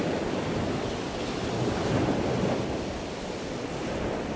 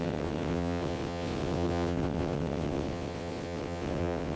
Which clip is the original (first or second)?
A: first